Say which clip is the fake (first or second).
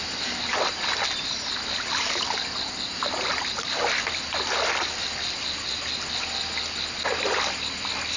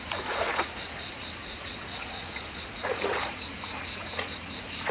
second